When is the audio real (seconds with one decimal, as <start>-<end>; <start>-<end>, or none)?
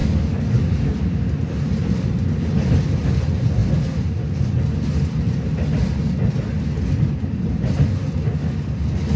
0.6-9.2